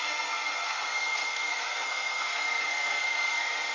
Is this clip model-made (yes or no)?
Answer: yes